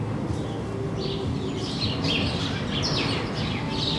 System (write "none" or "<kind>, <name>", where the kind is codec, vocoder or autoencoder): none